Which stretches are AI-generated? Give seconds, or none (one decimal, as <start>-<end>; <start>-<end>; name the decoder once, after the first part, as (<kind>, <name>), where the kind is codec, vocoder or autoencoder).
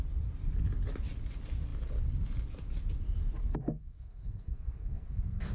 3.4-5.5 (codec, SNAC)